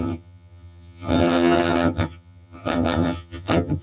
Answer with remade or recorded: remade